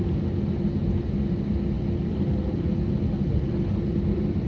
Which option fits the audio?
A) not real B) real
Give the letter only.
B